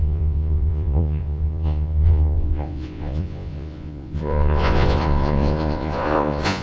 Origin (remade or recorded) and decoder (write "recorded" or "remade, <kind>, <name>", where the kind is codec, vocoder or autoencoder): remade, vocoder, Vocos